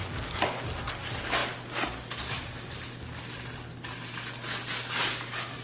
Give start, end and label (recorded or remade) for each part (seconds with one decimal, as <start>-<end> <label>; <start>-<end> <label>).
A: 0.0-5.6 recorded